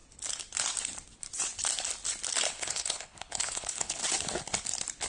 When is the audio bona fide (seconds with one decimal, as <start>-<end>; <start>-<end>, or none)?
0.0-2.5; 4.0-5.1